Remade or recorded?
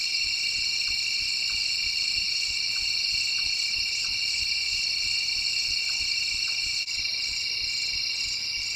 recorded